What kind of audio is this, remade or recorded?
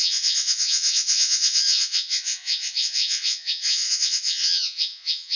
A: remade